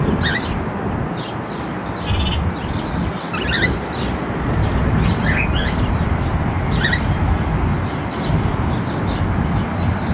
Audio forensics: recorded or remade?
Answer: recorded